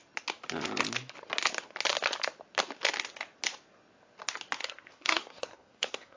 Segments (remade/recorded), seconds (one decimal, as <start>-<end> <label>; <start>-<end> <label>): 0.0-4.6 recorded; 4.6-6.2 remade